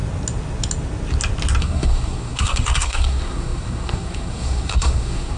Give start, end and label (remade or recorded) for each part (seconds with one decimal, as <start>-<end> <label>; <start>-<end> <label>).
0.0-1.6 recorded; 1.6-5.4 remade